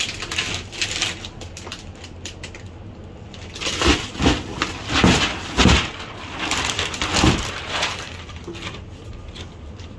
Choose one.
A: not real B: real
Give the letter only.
B